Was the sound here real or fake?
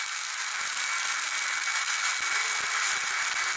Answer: real